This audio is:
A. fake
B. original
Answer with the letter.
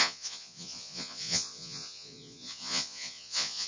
A